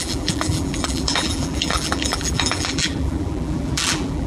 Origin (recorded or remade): remade